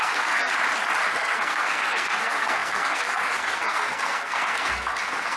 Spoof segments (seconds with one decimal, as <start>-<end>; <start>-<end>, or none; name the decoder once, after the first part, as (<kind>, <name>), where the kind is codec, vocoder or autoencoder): 0.0-0.5 (codec, SNAC); 1.1-5.4

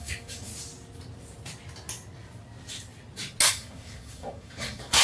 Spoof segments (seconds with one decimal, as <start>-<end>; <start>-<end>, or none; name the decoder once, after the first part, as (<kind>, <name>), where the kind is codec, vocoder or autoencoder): 0.0-0.5 (codec, DAC); 3.5-5.0

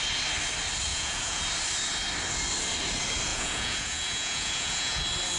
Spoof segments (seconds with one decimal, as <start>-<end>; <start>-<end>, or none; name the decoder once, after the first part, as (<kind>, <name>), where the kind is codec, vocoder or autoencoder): 0.9-1.4 (vocoder, Vocos); 3.3-5.0

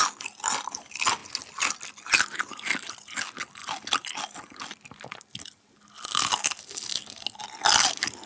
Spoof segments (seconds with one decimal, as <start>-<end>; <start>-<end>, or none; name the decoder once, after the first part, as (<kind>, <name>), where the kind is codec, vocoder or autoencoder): none

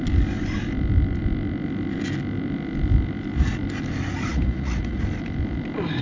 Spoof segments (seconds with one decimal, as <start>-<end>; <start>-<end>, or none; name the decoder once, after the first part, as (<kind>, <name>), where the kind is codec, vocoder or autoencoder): 4.3-5.0 (vocoder, Vocos)

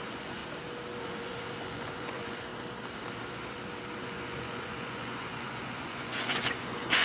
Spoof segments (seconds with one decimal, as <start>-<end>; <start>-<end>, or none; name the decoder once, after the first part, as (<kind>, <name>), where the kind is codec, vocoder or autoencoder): 0.0-0.4 (vocoder, Vocos); 1.0-2.5; 4.0-7.0